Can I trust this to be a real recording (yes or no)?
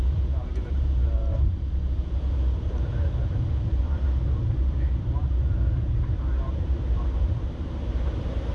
no